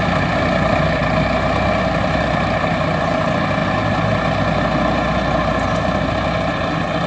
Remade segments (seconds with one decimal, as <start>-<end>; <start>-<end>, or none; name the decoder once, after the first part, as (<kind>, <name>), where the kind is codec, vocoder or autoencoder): 0.0-1.0 (vocoder, BigVGAN v2); 2.0-3.6; 5.3-7.1